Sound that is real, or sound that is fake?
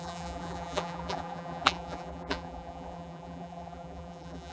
fake